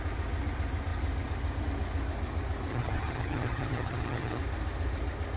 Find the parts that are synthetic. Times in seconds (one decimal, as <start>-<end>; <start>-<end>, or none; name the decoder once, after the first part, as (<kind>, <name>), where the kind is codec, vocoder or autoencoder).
2.7-4.4 (vocoder, HiFi-GAN)